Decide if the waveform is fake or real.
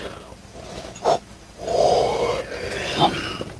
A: real